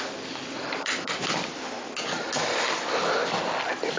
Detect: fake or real real